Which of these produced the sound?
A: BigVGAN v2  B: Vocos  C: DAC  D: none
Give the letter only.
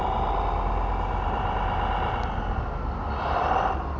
D